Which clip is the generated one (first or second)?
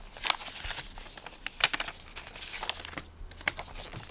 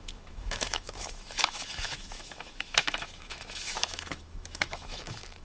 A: second